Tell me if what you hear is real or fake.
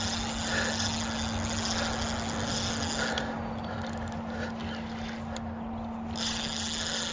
real